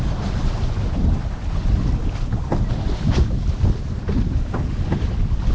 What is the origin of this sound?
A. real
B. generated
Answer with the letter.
A